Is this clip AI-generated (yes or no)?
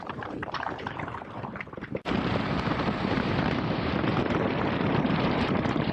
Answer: yes